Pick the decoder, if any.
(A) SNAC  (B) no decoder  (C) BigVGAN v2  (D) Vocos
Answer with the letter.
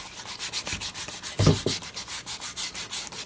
B